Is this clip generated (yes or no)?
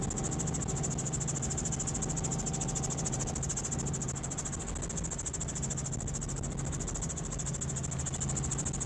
no